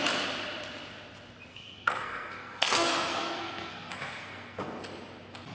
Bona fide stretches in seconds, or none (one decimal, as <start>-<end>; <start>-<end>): 0.0-1.5; 4.8-5.5